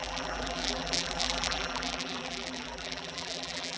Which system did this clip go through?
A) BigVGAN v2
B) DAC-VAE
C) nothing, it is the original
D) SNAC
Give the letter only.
A